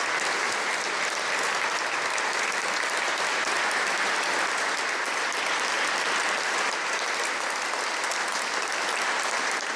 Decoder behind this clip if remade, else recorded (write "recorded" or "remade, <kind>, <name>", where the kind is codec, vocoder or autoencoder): remade, vocoder, BigVGAN v2